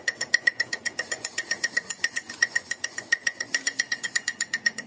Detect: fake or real fake